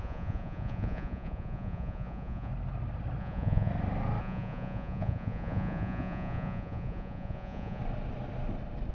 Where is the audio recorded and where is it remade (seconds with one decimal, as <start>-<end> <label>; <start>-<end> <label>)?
0.0-2.5 remade; 2.5-3.2 recorded; 3.2-3.7 remade; 3.7-4.2 recorded; 4.2-7.8 remade; 7.8-8.9 recorded